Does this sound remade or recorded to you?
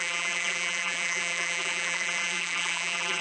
remade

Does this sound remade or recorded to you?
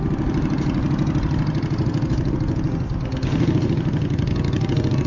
recorded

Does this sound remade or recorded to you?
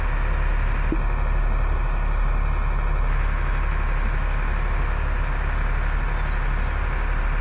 recorded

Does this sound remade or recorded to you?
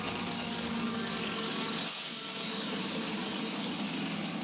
remade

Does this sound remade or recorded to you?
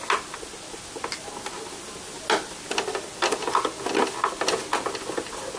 recorded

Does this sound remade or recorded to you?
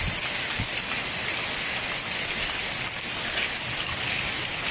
recorded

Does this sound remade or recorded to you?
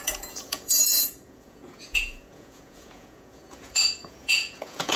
remade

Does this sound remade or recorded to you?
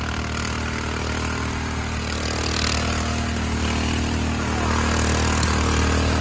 recorded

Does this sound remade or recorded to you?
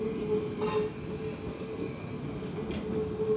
recorded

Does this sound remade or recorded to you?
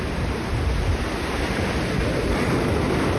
recorded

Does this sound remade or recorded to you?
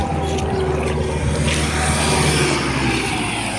recorded